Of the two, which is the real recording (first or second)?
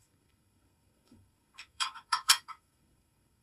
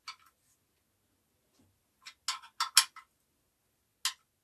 second